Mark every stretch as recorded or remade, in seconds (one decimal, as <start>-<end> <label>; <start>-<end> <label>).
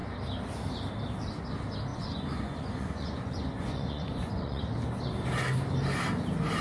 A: 0.0-1.9 recorded; 1.9-4.6 remade; 4.6-6.6 recorded